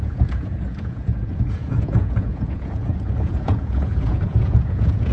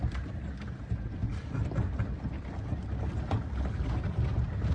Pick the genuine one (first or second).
second